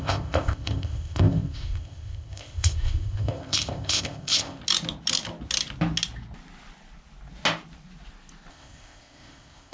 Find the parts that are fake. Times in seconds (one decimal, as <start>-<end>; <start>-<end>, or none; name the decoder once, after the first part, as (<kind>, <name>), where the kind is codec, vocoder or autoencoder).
0.0-4.6 (codec, ZipCodec); 8.5-9.7